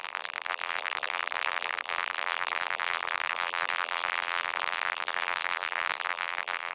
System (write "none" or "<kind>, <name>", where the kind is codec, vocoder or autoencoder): vocoder, BigVGAN v2